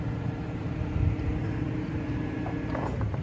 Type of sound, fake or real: fake